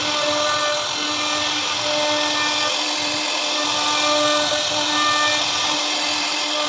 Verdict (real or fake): real